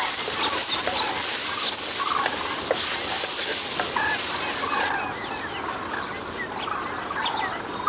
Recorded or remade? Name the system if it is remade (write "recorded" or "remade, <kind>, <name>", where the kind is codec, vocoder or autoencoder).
recorded